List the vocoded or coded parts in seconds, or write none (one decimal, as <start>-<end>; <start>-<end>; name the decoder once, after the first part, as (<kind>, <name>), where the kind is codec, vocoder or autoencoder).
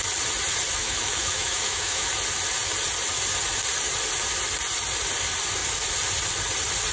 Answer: 0.8-2.1 (autoencoder, DAC-VAE)